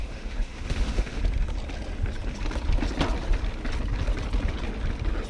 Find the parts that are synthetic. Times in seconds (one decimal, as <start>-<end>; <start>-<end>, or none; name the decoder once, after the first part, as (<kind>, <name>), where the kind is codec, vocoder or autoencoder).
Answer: 0.0-1.2 (autoencoder, DAC-VAE)